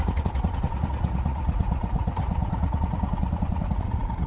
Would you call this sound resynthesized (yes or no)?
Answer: yes